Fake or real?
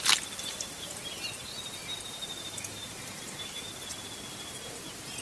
real